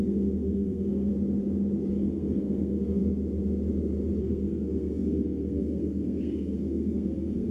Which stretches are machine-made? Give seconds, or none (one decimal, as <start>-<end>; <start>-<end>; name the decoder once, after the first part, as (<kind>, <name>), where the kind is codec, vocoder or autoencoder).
0.0-1.1 (codec, SNAC); 1.9-3.0; 4.2-7.5